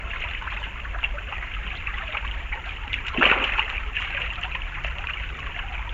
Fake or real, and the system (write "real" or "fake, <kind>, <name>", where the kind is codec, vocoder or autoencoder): real